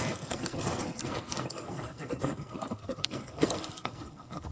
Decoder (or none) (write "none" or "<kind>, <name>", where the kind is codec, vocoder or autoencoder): codec, SNAC